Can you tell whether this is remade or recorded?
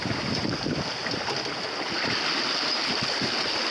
recorded